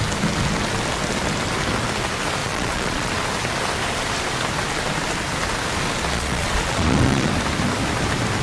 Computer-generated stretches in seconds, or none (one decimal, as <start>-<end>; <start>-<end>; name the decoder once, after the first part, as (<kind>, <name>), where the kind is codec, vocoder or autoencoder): 2.4-3.1 (vocoder, Vocos); 6.1-7.3